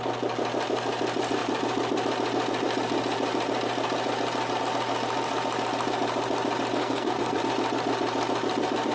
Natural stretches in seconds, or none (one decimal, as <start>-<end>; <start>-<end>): 0.0-6.8; 7.4-8.9